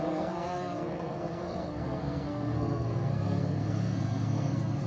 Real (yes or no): no